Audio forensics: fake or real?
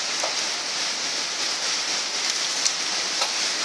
real